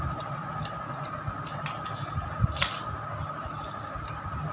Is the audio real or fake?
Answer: real